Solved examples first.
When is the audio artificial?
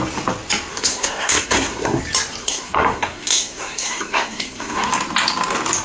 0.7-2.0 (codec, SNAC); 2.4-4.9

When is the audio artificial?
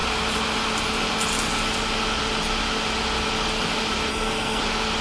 4.1-4.6 (codec, SNAC)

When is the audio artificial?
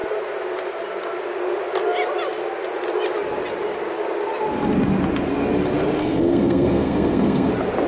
6.0-7.5 (codec, SNAC)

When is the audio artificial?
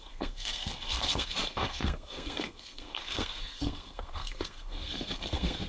0.0-5.7 (codec, SNAC)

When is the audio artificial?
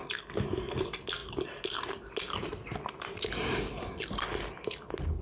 none